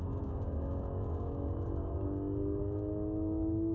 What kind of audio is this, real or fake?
fake